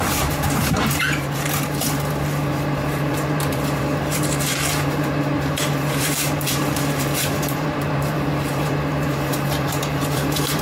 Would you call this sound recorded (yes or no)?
no